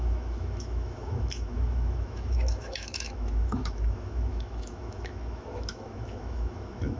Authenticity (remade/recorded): remade